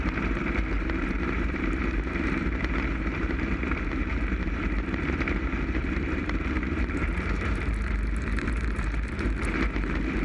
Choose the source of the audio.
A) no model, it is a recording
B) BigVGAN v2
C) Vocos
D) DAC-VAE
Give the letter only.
B